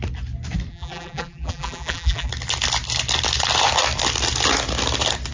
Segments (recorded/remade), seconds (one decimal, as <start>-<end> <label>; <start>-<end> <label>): 0.0-0.7 recorded; 0.7-2.3 remade; 2.3-5.3 recorded